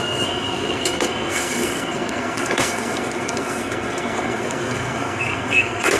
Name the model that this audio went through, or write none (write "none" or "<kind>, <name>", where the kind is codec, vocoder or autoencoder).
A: codec, SNAC